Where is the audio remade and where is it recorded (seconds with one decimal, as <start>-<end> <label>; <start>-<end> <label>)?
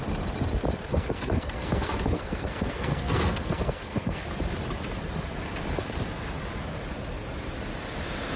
0.0-0.9 recorded; 0.9-4.2 remade; 4.2-8.4 recorded